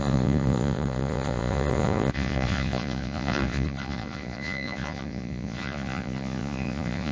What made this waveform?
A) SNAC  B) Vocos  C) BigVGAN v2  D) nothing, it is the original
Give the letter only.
B